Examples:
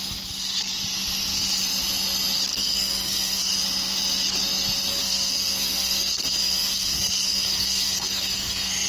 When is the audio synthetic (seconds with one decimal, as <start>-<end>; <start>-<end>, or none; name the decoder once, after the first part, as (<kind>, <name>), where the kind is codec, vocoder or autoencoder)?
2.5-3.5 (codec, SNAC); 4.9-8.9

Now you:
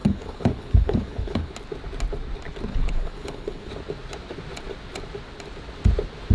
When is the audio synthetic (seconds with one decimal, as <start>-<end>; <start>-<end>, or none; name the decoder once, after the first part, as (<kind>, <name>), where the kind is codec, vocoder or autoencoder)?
0.0-1.5 (codec, HILCodec); 2.7-3.7

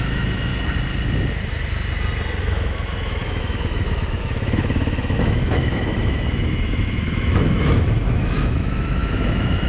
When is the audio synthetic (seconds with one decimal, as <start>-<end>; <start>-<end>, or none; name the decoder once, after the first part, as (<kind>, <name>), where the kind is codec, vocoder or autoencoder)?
0.0-0.5 (autoencoder, DAC-VAE); 2.4-9.7

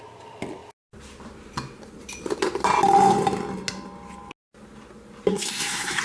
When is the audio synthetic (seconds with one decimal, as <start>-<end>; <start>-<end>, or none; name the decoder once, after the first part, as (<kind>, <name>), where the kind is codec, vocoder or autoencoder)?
5.3-6.0 (codec, SNAC)

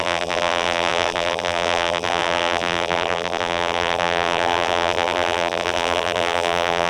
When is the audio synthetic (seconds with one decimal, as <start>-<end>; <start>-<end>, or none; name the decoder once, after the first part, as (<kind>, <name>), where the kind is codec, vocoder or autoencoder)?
0.0-6.9 (vocoder, BigVGAN v2)